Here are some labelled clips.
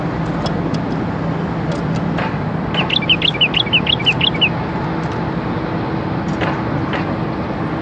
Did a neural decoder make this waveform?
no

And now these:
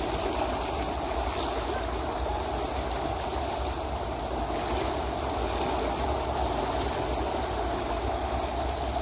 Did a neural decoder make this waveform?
no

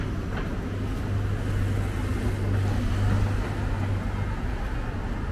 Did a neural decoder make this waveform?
no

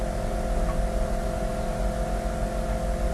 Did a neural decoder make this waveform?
no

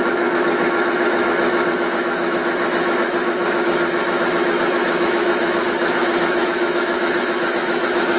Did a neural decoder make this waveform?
yes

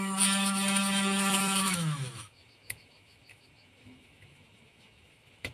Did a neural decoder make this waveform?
yes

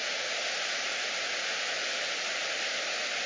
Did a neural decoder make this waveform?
no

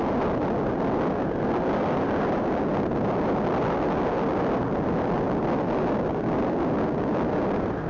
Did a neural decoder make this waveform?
no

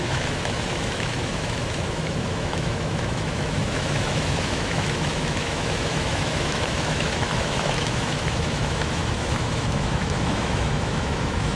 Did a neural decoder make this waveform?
yes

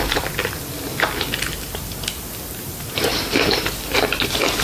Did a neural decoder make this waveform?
no